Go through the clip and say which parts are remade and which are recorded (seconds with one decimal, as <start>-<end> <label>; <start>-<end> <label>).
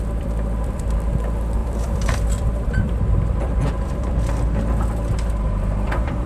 0.0-6.3 remade